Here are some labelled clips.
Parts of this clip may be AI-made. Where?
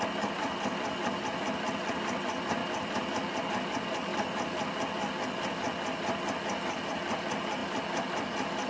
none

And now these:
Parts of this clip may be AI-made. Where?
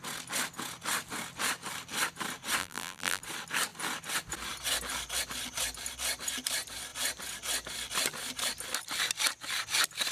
2.6-3.2 (vocoder, BigVGAN v2)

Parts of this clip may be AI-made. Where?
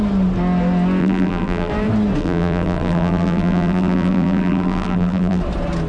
1.0-1.7 (vocoder, BigVGAN v2); 2.2-5.4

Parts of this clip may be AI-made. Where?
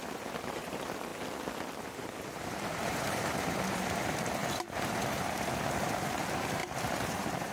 0.0-1.1 (vocoder, BigVGAN v2); 1.8-7.5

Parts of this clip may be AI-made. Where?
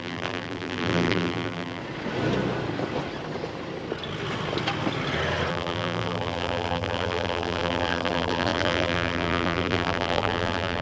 0.0-1.8 (vocoder, BigVGAN v2); 5.5-10.8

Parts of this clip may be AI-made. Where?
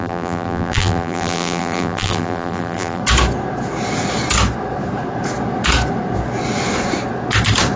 0.0-3.0 (vocoder, BigVGAN v2)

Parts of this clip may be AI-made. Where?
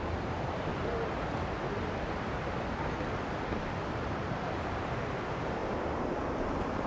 0.0-0.7 (vocoder, BigVGAN v2); 3.9-5.6; 6.5-6.9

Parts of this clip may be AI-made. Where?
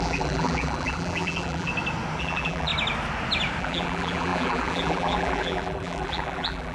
0.0-1.7 (vocoder, BigVGAN v2); 2.2-2.7; 3.6-6.7